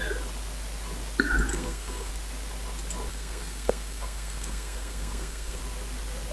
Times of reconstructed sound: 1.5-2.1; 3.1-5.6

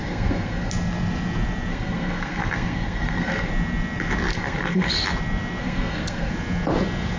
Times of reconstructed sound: 0.0-0.7; 1.7-3.5; 4.3-4.9; 5.6-6.3

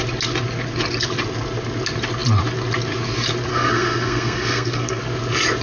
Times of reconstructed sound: 3.5-5.0

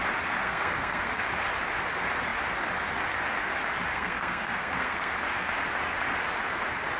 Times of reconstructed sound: 0.4-1.2; 3.9-5.1

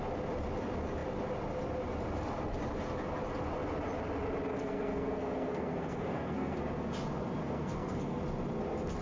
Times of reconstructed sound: 4.5-6.6; 7.4-8.2